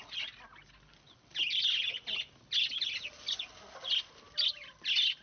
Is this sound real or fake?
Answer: real